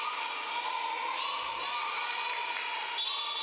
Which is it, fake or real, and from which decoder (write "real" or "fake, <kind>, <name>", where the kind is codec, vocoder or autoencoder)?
real